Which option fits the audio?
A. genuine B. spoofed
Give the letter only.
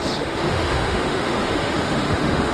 B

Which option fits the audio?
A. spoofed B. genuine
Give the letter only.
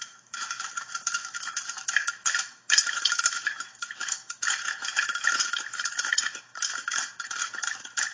A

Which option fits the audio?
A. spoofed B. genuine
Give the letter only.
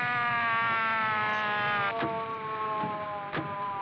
B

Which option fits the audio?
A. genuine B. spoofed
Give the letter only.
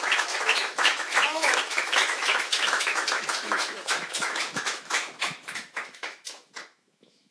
B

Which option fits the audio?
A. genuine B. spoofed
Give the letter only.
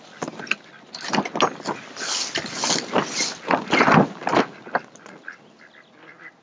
A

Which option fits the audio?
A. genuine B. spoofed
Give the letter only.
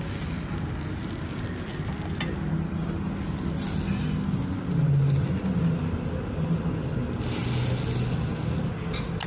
A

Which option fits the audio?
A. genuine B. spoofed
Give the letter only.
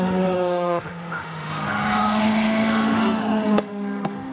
B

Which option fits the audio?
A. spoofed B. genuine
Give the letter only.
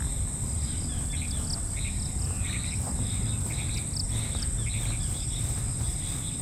B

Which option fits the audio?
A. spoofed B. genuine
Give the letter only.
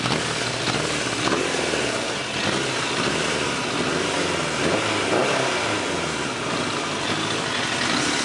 B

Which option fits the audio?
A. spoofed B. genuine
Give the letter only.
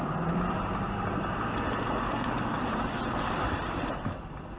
B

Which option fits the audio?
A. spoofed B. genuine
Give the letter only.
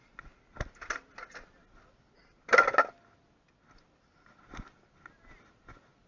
B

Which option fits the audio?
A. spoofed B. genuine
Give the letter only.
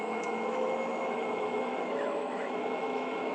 A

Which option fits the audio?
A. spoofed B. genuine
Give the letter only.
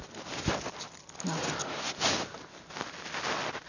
B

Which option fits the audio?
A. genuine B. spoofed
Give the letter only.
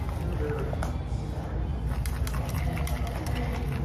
A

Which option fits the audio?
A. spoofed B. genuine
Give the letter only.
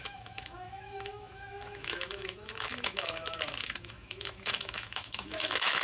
A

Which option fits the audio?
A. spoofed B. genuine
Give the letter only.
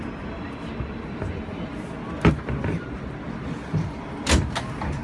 B